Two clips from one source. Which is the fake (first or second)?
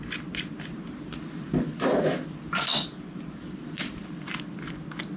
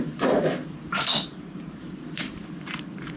second